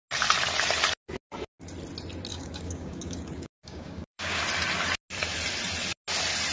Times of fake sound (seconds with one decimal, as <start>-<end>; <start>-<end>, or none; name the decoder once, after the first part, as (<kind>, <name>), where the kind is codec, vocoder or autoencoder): 2.3-4.4 (codec, DAC)

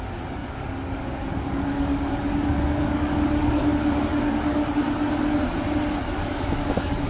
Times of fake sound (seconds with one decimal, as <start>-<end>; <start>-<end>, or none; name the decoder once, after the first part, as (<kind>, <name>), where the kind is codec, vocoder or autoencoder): 0.4-4.7 (codec, DAC); 6.0-7.1

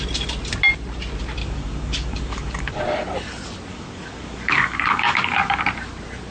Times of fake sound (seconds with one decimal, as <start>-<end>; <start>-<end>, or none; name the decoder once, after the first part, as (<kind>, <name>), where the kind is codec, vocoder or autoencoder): 1.4-2.8 (codec, DAC); 3.7-5.6

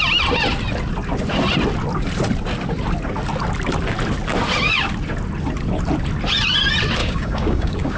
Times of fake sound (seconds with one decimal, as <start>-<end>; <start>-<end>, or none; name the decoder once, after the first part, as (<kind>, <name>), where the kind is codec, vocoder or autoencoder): 7.0-8.0 (codec, DAC)

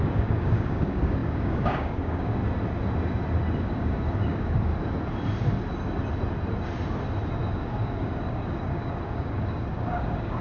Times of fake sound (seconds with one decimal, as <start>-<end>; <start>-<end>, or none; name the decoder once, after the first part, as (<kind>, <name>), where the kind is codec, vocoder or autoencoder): 0.0-2.4 (codec, DAC); 3.6-4.7; 7.5-10.4

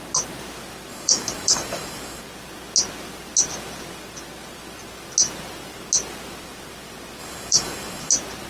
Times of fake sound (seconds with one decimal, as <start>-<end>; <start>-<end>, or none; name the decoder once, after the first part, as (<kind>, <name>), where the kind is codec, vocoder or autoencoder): 0.9-2.2 (codec, DAC); 7.2-8.1

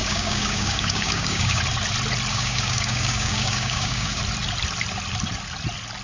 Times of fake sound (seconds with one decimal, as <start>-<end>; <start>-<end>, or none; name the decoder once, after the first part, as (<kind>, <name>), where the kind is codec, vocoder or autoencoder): 0.0-1.6 (codec, DAC); 2.3-4.2